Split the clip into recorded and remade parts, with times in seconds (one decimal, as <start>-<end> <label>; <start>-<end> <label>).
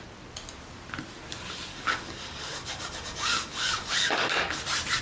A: 0.0-1.7 recorded; 1.7-4.6 remade; 4.6-5.0 recorded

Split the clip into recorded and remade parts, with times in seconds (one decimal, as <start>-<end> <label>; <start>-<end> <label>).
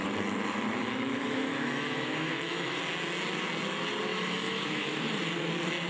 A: 0.0-0.8 recorded; 0.8-2.8 remade; 2.8-4.1 recorded; 4.1-5.0 remade; 5.0-5.9 recorded